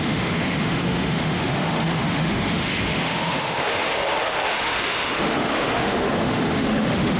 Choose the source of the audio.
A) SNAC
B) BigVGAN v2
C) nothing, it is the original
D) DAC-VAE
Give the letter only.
D